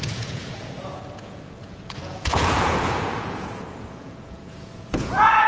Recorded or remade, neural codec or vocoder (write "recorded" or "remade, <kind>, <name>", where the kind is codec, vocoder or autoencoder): remade, vocoder, Vocos